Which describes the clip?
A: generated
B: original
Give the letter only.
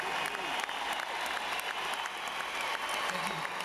B